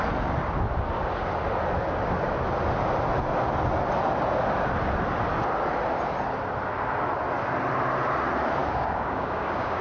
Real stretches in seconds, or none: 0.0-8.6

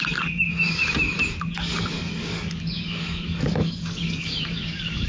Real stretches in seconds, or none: 0.8-1.3

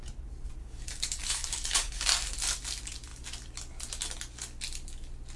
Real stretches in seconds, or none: 0.0-0.6; 2.3-5.4

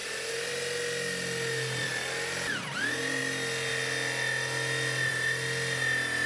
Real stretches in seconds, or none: 0.0-6.3

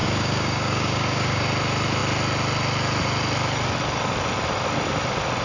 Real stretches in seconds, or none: 1.4-5.4

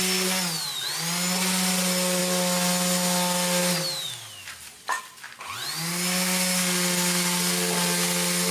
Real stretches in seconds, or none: 0.0-8.5